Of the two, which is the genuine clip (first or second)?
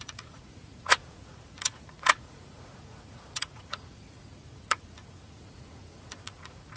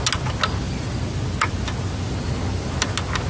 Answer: second